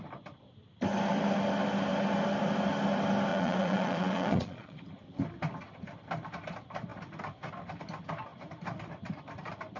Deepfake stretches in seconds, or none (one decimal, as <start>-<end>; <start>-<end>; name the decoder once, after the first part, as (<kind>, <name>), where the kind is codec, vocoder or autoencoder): 3.3-4.8 (vocoder, Vocos)